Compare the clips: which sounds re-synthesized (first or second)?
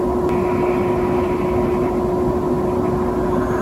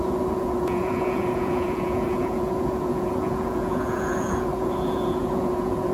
second